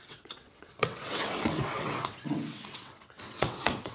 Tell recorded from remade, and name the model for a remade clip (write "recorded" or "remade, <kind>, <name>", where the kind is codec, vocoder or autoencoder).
remade, vocoder, WaveNeXt